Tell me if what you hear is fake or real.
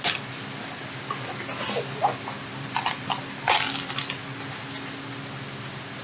real